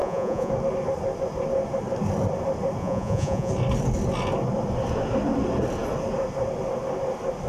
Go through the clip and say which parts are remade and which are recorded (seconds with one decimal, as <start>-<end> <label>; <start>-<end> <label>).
0.0-0.5 remade; 0.5-2.8 recorded; 2.8-3.5 remade; 3.5-7.5 recorded